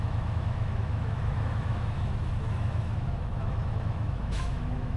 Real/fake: fake